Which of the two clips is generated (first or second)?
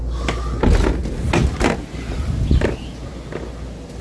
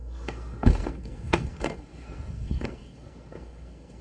second